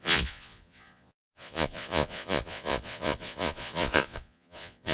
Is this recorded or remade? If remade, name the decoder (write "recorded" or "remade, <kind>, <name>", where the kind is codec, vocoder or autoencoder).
remade, vocoder, Vocos